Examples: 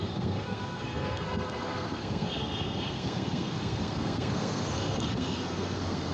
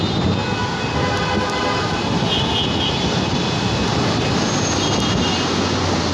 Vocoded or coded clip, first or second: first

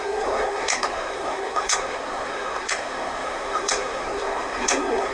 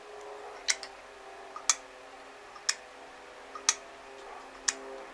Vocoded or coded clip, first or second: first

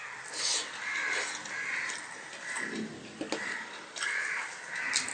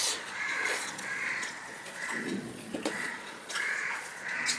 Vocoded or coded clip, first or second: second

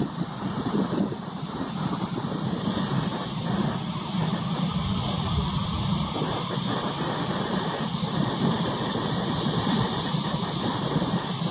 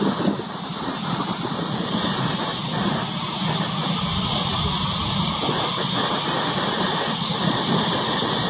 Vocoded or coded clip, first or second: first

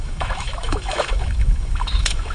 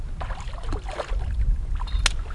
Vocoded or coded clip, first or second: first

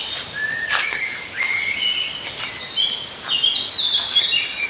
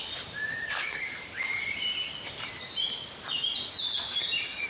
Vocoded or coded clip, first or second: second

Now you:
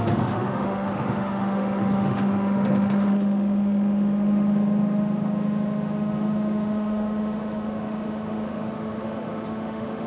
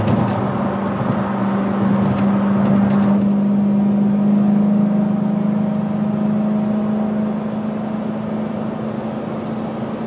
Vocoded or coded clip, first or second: first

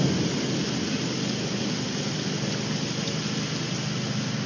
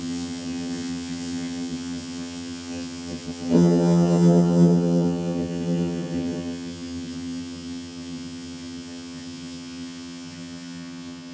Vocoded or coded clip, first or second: second